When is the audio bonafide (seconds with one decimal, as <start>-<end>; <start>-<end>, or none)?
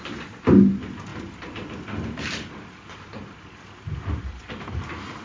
0.0-5.2